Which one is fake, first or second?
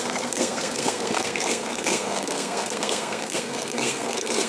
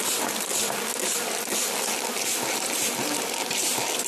first